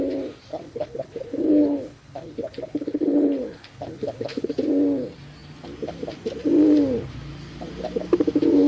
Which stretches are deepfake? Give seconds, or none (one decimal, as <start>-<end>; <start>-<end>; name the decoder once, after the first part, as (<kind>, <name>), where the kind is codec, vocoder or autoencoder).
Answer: 0.5-4.5 (codec, HILCodec)